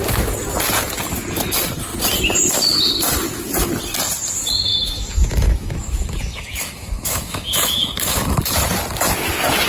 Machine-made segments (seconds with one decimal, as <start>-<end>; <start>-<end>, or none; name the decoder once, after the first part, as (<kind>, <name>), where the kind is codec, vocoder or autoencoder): 4.7-8.4 (autoencoder, DAC-VAE)